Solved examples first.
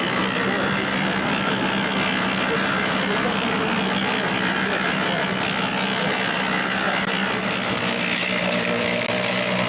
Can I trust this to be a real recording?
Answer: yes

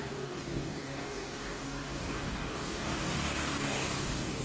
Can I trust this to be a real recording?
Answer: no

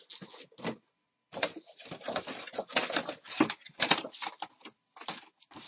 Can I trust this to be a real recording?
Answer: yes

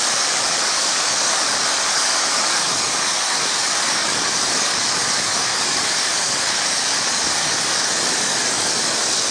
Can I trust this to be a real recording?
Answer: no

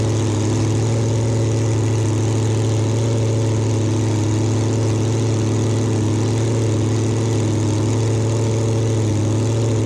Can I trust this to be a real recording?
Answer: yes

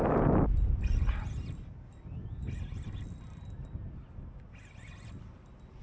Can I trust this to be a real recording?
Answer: yes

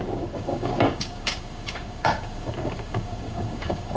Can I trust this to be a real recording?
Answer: no